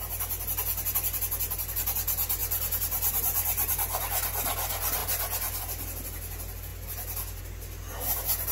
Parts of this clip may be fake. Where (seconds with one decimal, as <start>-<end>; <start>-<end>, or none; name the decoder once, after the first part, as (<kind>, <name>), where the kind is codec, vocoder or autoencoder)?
2.4-3.7 (vocoder, BigVGAN v2)